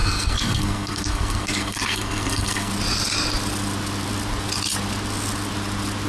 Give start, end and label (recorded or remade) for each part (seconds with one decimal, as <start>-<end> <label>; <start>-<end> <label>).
0.0-2.7 remade; 2.7-6.1 recorded